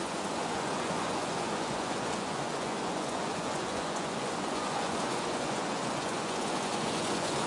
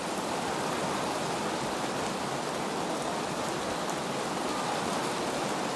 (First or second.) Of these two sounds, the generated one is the first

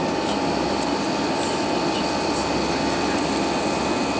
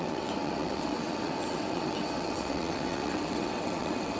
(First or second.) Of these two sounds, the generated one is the second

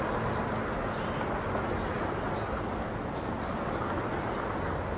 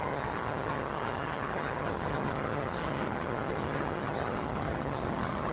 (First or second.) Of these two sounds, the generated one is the second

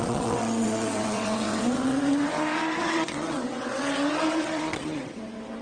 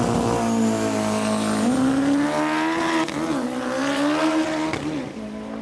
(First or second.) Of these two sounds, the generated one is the first